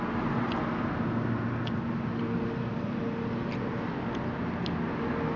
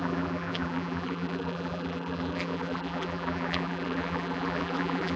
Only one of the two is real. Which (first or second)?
first